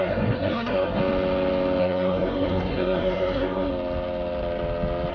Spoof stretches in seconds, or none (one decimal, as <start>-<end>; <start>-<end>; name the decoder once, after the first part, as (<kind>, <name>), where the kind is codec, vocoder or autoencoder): 0.0-1.0 (codec, SNAC); 1.8-3.7